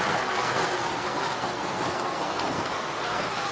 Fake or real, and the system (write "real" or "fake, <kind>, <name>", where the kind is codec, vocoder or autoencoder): fake, codec, SNAC